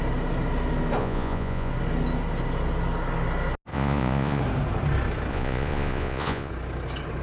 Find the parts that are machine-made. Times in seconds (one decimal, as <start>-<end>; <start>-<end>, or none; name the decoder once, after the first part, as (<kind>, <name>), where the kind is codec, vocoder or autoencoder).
1.0-1.7 (vocoder, Vocos); 3.7-4.4; 5.3-6.5

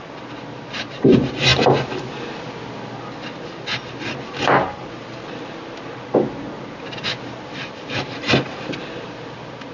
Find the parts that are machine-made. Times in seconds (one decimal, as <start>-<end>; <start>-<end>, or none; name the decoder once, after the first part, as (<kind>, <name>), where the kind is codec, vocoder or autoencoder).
none

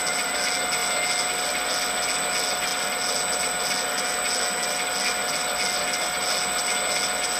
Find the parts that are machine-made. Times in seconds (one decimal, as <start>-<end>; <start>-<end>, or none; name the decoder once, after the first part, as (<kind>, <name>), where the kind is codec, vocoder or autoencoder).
none

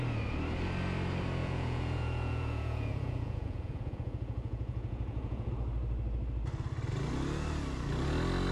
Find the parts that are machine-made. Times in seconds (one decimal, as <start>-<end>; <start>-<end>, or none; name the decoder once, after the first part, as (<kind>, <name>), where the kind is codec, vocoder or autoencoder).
1.4-5.5 (vocoder, Vocos)